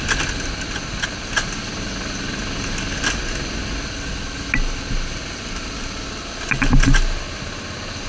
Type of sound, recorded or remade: recorded